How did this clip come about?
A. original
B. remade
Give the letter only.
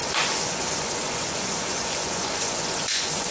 B